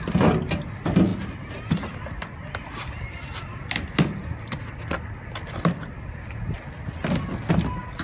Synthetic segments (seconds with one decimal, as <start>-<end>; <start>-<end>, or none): none